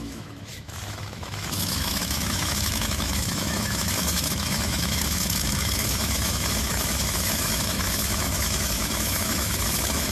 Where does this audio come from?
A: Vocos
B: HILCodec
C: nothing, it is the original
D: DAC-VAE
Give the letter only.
D